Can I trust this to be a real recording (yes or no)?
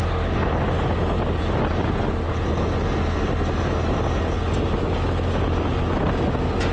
yes